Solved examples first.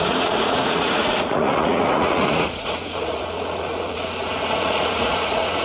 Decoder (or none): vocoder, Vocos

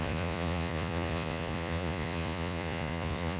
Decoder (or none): vocoder, Vocos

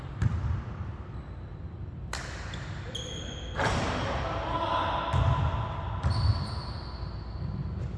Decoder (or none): none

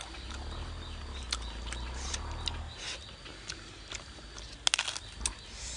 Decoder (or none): none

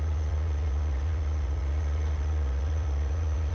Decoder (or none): vocoder, Vocos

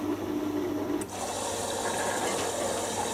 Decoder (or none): none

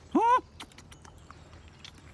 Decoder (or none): none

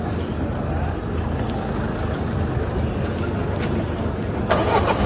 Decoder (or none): none